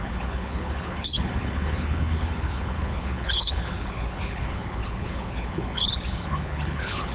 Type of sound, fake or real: fake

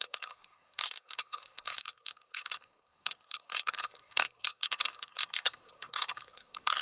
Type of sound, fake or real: fake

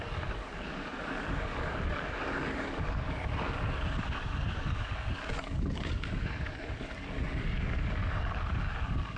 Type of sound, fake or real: fake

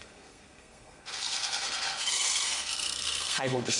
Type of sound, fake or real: fake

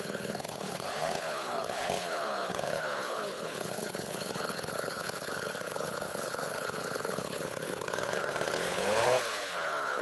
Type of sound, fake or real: fake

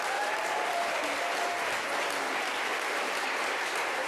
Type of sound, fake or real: real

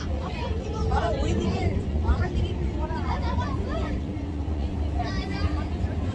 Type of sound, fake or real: fake